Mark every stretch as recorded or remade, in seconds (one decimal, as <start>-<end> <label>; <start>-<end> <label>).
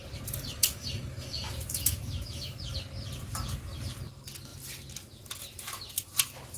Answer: 0.0-0.6 recorded; 0.6-2.6 remade; 2.6-6.6 recorded